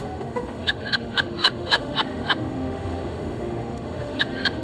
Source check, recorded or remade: remade